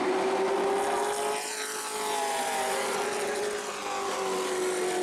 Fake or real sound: real